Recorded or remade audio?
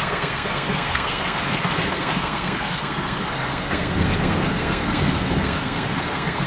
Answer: remade